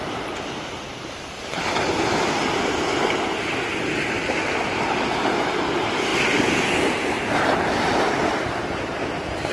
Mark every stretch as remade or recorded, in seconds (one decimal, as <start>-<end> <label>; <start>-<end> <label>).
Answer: 0.0-9.5 recorded